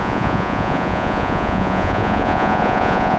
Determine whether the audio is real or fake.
fake